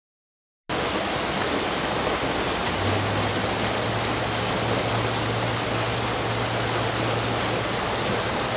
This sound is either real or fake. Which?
real